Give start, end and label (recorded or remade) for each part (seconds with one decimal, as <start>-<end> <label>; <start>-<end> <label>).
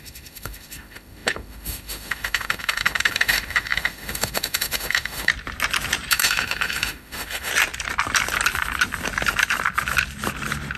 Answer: 0.0-5.3 remade; 5.3-6.1 recorded; 6.1-7.5 remade; 7.5-10.8 recorded